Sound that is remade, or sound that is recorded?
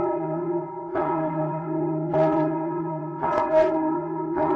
remade